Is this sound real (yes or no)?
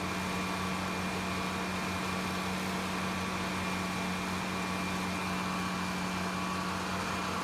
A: yes